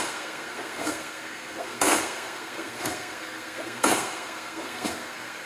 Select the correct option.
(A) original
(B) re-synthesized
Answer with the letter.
B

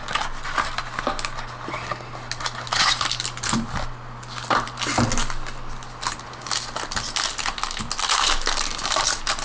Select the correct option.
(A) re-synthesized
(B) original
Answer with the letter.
B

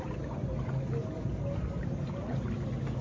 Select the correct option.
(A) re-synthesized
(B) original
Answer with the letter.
B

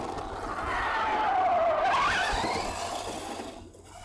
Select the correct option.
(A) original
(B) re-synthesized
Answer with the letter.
A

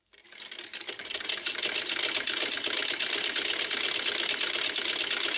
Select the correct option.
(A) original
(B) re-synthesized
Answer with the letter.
A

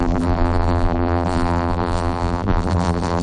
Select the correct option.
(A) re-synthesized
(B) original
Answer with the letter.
A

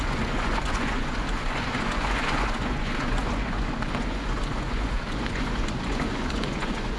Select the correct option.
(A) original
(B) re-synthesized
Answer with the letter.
B